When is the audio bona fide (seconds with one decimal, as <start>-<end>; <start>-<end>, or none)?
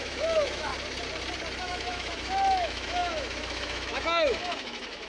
0.7-1.6